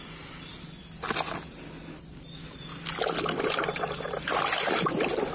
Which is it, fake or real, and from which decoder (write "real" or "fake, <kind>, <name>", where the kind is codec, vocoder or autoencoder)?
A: real